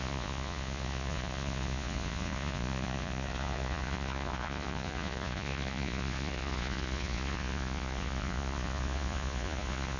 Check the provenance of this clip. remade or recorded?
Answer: remade